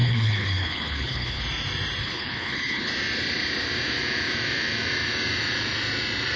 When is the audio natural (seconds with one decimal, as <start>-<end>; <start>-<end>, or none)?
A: 1.4-2.0; 2.9-6.4